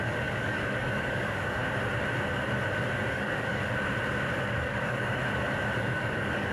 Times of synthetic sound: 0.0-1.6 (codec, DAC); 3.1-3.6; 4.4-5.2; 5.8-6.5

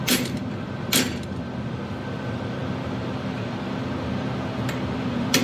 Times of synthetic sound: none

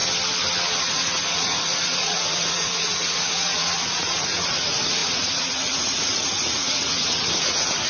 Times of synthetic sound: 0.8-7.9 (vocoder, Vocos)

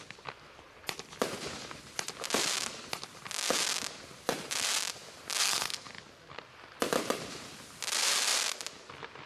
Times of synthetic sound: 5.4-5.9 (codec, SNAC)